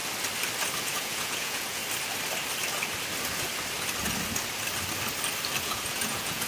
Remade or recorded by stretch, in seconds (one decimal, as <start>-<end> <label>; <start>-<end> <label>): 0.0-0.8 recorded; 0.8-1.8 remade; 1.8-5.6 recorded; 5.6-6.5 remade

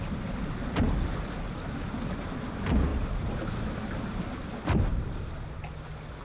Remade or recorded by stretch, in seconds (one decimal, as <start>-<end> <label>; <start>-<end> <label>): 0.0-6.2 recorded

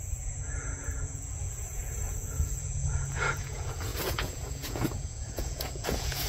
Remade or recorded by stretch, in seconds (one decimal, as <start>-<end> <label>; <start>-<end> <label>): 0.0-6.3 remade

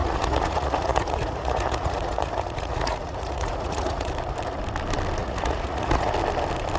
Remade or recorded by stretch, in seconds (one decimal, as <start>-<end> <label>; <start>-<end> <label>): 0.0-4.1 remade; 4.1-5.2 recorded; 5.2-6.1 remade; 6.1-6.8 recorded

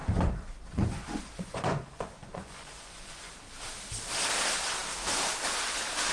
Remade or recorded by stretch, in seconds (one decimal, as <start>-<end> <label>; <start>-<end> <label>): 0.0-3.3 remade; 3.3-6.1 recorded

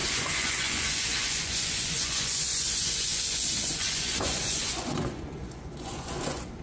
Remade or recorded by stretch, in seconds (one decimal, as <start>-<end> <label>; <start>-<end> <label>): 0.0-6.6 remade

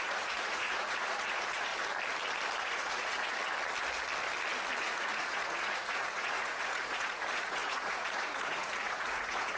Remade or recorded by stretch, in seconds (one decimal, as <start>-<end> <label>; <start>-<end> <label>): 0.0-1.7 remade; 1.7-2.6 recorded; 2.6-3.4 remade; 3.4-4.8 recorded; 4.8-9.6 remade